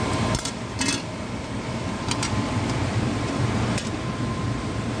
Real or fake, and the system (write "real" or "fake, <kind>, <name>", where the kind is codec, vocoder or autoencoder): real